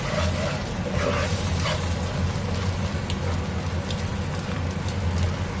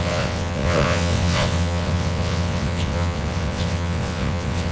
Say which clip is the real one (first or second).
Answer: first